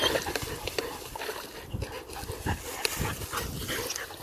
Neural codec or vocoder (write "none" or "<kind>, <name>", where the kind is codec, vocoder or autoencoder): none